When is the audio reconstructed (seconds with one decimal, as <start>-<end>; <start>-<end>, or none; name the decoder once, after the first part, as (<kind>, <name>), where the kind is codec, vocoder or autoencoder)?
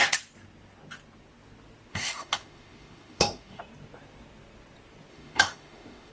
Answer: 1.9-3.6 (autoencoder, DAC-VAE); 5.1-6.1